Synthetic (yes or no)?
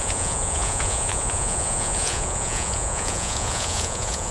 yes